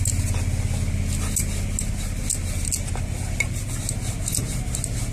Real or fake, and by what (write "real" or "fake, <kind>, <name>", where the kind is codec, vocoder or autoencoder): real